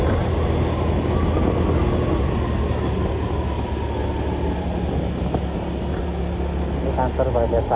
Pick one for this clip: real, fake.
real